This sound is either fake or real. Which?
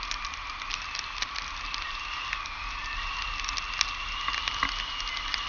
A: real